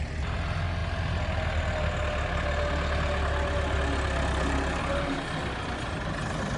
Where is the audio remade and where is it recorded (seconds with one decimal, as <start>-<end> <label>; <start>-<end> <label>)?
0.0-6.6 recorded